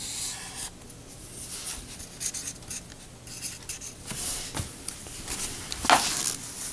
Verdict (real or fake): real